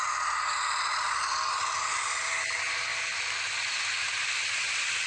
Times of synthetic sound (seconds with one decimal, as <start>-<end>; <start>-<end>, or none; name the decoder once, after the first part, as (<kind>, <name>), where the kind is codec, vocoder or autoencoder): none